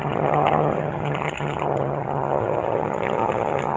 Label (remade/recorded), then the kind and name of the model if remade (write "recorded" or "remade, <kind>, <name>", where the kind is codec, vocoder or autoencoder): remade, vocoder, HiFi-GAN